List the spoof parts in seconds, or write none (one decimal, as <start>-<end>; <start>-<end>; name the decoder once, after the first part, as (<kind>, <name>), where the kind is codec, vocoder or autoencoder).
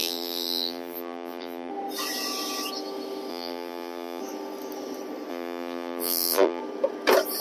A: 0.0-1.7 (vocoder, BigVGAN v2); 3.3-4.2; 5.3-6.6